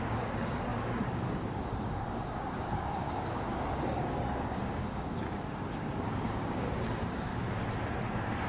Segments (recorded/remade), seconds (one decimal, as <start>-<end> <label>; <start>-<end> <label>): 0.0-7.3 remade; 7.3-8.0 recorded; 8.0-8.5 remade